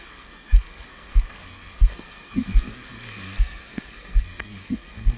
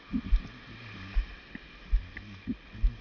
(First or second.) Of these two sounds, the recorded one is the second